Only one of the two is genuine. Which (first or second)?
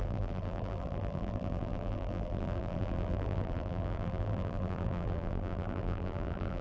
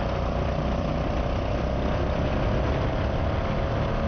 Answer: second